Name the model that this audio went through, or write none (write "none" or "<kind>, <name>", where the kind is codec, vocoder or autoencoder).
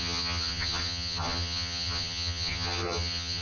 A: vocoder, HiFi-GAN